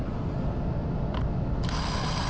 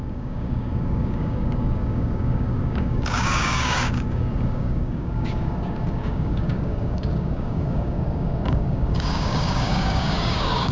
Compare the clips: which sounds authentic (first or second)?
first